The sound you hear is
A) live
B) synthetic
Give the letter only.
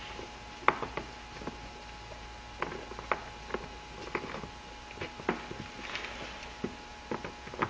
A